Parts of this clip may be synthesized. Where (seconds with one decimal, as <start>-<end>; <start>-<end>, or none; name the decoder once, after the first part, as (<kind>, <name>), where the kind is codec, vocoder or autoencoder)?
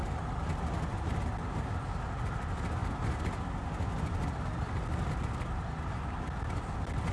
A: none